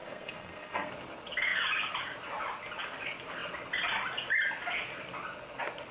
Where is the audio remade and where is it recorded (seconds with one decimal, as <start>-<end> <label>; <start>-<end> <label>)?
0.0-0.9 remade; 0.9-5.9 recorded